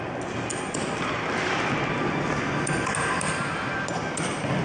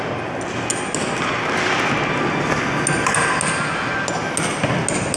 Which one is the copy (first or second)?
first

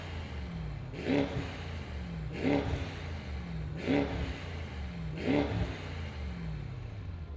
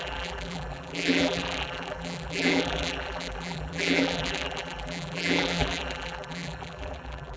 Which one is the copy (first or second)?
second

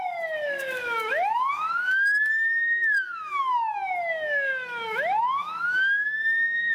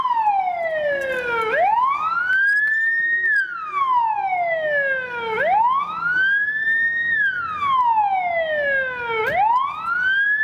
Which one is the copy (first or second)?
first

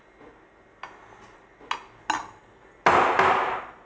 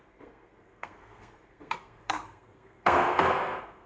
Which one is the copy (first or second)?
second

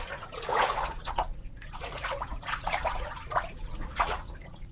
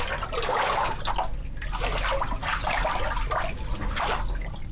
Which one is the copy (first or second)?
first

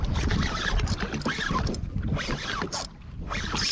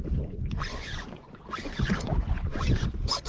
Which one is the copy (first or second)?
second